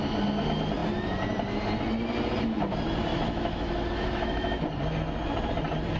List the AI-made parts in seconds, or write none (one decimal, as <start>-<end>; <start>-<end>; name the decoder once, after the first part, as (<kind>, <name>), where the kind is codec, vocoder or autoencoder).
3.1-4.6 (autoencoder, DAC-VAE)